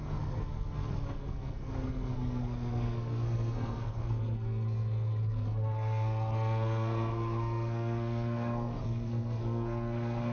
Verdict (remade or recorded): remade